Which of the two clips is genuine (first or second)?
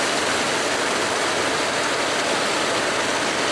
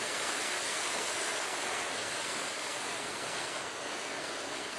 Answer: first